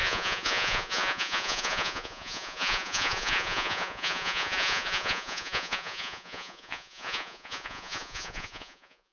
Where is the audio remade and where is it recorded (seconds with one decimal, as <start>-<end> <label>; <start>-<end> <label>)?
0.0-9.1 remade